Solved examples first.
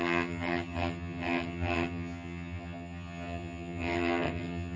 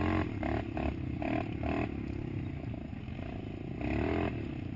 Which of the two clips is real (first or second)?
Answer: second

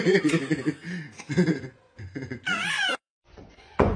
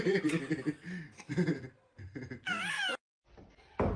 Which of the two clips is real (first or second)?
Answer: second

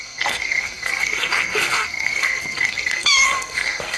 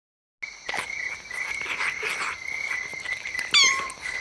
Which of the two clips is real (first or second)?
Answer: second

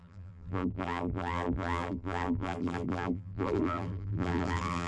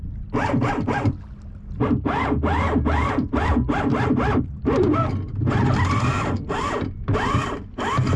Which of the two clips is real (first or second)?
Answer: second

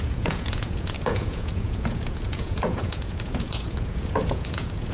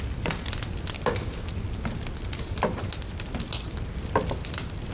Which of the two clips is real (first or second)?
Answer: second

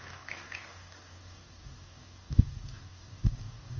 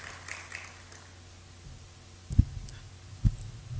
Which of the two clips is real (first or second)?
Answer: second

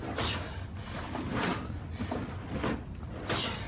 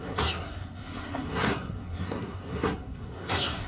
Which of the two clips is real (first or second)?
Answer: first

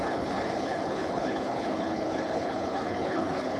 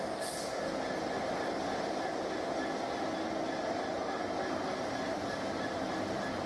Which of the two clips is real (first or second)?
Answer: second